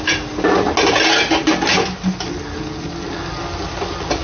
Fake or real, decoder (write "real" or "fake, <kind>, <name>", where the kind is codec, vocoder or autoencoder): real